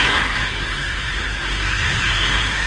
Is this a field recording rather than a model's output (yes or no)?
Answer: no